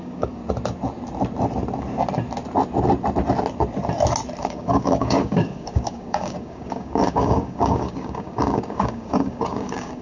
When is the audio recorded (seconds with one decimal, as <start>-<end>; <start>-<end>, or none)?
0.4-4.4

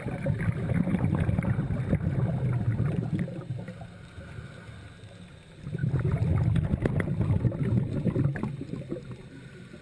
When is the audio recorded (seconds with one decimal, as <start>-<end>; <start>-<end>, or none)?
0.0-9.8

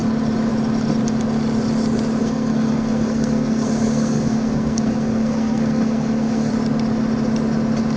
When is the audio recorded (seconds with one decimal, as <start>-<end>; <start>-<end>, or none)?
0.0-2.2; 6.5-8.0

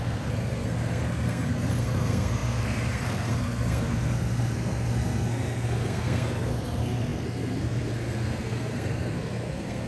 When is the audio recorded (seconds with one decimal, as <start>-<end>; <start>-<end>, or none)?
none